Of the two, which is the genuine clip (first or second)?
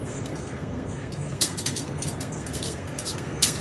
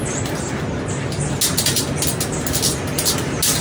second